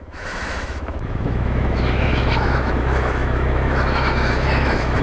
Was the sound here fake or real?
fake